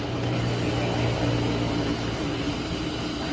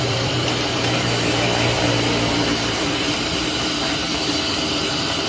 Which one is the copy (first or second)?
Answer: second